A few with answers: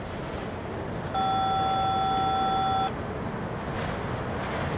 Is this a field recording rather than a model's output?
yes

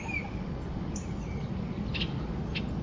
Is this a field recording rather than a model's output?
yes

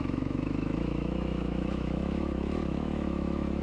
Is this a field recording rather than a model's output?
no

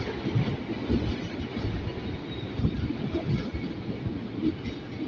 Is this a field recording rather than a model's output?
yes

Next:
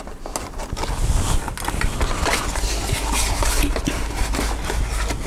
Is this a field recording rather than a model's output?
yes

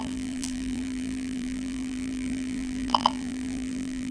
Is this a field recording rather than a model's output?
no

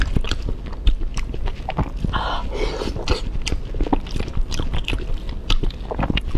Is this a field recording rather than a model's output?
yes